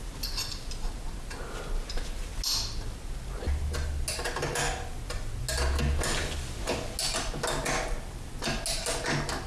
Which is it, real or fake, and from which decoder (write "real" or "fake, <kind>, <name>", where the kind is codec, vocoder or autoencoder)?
real